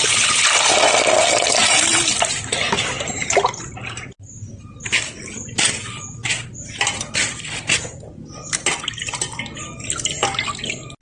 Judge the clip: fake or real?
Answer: real